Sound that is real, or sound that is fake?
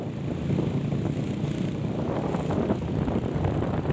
real